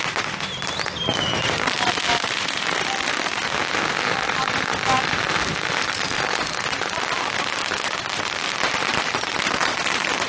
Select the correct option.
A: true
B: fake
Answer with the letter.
A